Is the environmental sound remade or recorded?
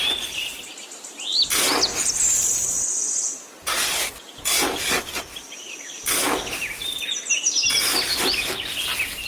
recorded